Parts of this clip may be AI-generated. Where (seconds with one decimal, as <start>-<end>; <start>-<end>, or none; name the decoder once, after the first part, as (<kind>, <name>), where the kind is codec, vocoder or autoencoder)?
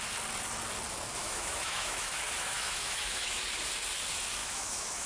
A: 1.2-3.4 (autoencoder, DAC-VAE); 4.4-5.1